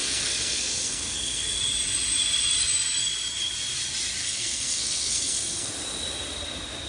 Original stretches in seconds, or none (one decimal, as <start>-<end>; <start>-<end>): 1.6-4.2; 5.7-6.9